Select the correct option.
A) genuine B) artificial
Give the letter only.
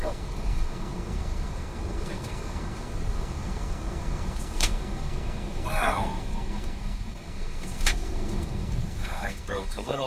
B